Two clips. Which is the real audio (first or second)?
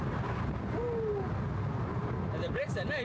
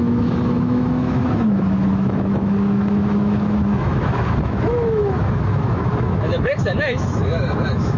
first